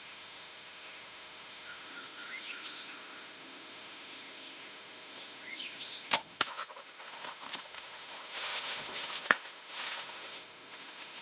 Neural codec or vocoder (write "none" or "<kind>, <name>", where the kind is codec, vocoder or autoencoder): autoencoder, DAC-VAE